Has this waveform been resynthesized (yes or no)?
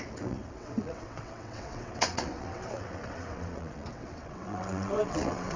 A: yes